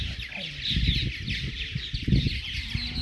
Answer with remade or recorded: recorded